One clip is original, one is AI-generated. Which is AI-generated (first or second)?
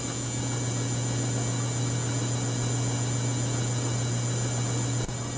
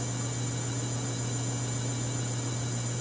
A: second